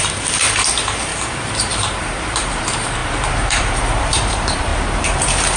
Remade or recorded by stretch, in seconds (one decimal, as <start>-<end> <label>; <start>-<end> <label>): 0.0-1.1 remade; 1.1-2.0 recorded; 2.0-4.7 remade; 4.7-5.6 recorded